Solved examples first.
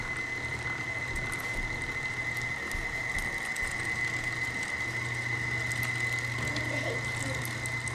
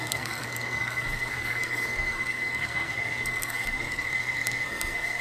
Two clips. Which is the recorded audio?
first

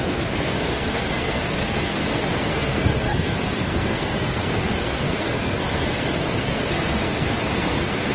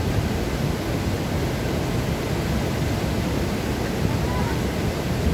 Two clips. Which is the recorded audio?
second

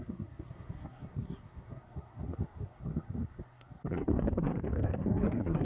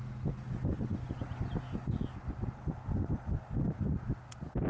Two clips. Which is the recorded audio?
second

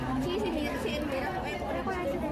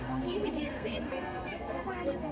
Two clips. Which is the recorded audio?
first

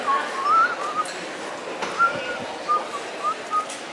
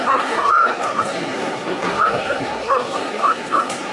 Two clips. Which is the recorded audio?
first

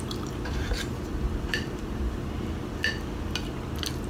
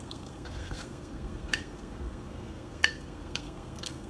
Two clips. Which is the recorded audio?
first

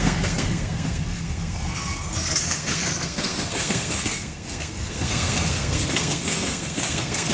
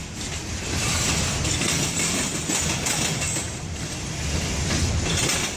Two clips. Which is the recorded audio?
second